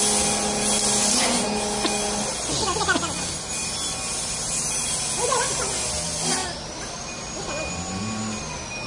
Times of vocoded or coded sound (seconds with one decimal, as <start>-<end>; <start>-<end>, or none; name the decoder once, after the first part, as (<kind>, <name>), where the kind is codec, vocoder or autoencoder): none